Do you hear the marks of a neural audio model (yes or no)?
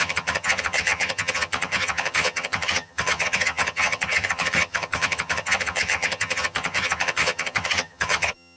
yes